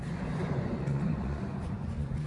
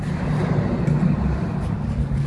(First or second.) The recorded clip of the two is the second